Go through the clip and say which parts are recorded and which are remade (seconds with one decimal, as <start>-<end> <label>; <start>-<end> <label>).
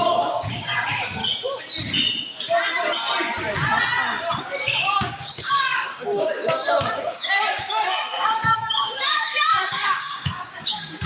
0.0-1.2 remade; 1.2-4.4 recorded; 4.4-11.1 remade